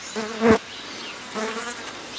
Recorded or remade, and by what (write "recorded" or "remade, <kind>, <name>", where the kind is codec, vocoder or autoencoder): recorded